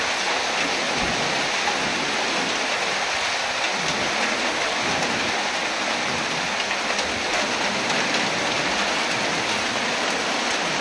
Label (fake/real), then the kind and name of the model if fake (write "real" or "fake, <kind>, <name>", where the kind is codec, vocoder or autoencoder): real